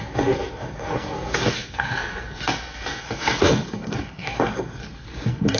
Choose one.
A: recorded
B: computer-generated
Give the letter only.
B